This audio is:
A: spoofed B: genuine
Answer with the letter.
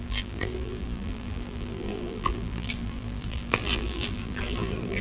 A